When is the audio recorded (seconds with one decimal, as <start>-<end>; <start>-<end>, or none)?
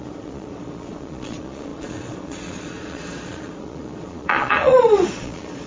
none